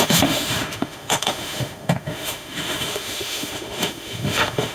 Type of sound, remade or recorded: remade